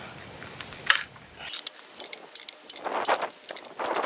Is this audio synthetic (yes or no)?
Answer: no